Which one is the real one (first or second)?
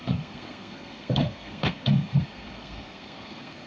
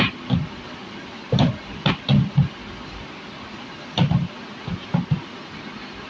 second